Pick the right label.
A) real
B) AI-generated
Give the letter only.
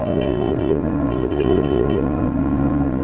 B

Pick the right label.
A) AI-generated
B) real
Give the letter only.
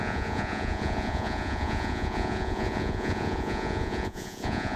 A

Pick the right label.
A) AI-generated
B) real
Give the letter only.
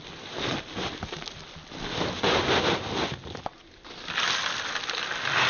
B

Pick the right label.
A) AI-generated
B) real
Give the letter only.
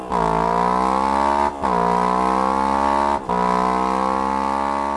B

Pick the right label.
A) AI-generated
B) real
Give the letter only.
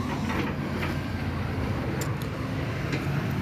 B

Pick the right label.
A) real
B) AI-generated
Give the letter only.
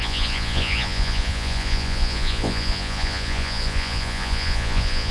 B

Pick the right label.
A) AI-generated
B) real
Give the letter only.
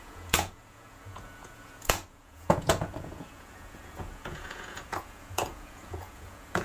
A